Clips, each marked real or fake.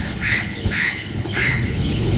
fake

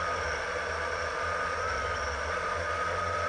real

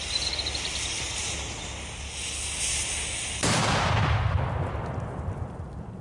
real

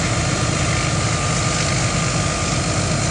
real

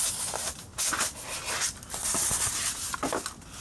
real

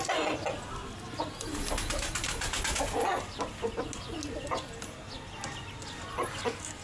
real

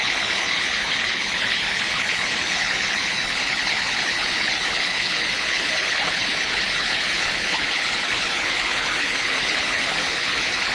fake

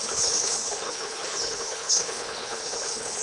fake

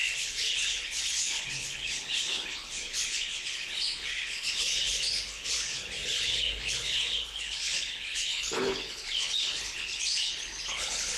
fake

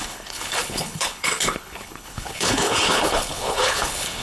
fake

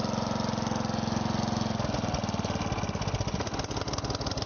real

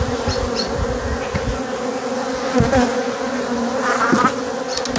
real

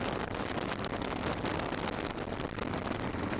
real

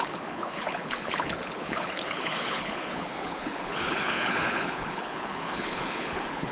fake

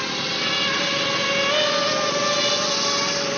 real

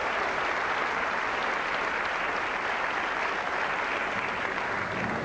real